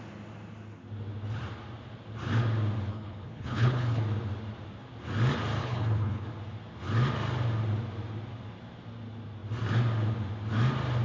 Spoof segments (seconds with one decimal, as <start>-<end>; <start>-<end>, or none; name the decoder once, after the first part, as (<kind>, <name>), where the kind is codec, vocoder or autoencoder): 2.9-4.0 (codec, HILCodec); 5.6-6.3